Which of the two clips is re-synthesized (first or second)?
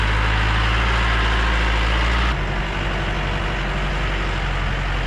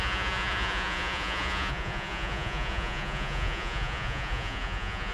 second